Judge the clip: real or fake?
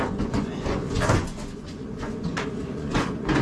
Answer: fake